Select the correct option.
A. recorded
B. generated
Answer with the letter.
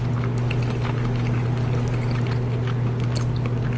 A